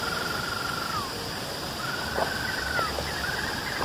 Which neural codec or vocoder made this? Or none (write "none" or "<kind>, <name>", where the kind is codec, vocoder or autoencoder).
none